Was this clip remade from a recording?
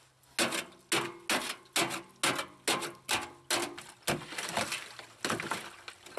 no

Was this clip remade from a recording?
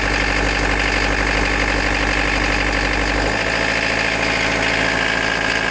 no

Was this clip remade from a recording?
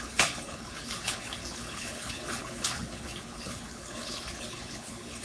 yes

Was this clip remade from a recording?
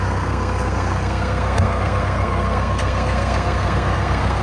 yes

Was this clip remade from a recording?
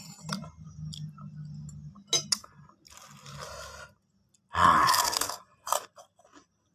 no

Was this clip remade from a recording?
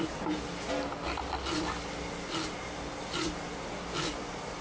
no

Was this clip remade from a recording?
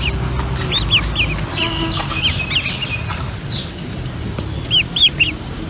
no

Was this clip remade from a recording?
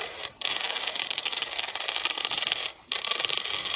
no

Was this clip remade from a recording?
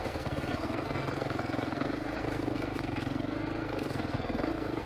yes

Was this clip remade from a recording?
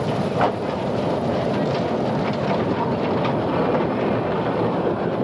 yes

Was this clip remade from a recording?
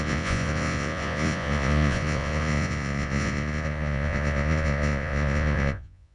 yes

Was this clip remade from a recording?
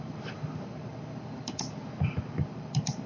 no